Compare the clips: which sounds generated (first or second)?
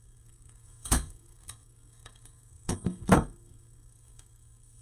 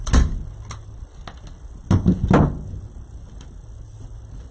first